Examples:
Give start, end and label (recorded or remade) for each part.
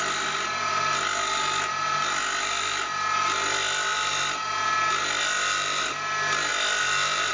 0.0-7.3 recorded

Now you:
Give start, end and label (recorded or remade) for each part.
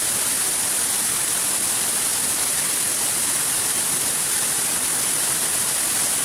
0.0-6.2 recorded